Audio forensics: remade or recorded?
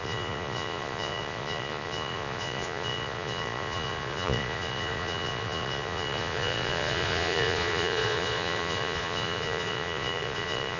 remade